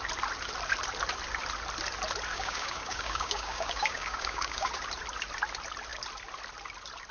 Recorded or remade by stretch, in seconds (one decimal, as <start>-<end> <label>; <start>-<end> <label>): 0.0-2.3 recorded; 2.3-4.7 remade; 4.7-7.1 recorded